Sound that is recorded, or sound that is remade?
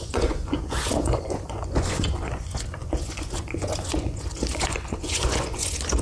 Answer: remade